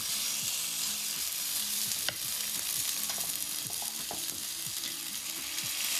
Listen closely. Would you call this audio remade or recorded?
remade